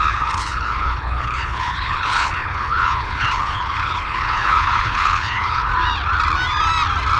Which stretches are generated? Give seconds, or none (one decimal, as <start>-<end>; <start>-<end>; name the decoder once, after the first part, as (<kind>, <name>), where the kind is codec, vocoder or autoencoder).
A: 0.0-5.7 (codec, HILCodec)

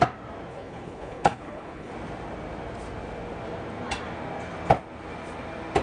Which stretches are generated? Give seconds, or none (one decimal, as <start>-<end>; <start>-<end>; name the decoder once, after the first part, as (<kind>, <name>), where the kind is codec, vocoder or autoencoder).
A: 0.5-1.9 (codec, HILCodec)

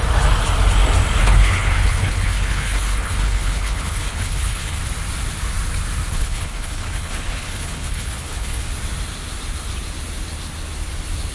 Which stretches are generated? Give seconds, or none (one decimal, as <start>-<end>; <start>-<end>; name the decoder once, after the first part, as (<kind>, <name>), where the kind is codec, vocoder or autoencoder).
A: 1.2-4.8 (codec, HILCodec); 6.1-8.7

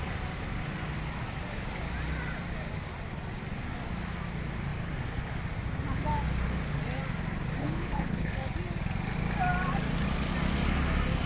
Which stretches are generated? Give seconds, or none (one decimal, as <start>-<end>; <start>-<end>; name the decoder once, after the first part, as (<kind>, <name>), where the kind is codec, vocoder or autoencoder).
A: 7.6-8.3 (codec, HILCodec)

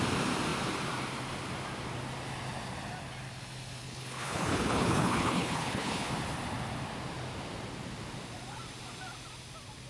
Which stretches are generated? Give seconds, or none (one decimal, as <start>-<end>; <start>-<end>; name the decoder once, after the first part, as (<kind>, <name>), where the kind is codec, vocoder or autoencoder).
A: 3.8-6.1 (codec, HILCodec)

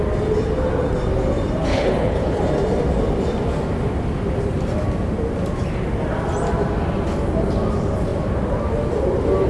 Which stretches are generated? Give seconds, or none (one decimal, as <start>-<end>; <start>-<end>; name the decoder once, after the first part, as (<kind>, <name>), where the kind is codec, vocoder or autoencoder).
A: 1.7-2.4 (codec, HILCodec)

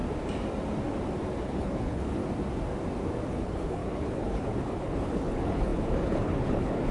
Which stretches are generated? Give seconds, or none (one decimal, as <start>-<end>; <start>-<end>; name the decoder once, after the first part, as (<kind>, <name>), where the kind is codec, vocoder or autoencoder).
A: 1.4-2.2 (codec, HILCodec); 3.3-6.9